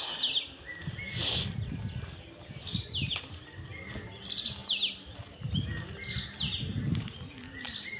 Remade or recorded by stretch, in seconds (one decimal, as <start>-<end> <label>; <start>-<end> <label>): 0.0-8.0 recorded